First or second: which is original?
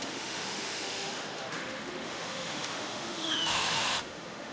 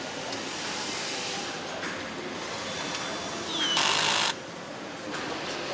second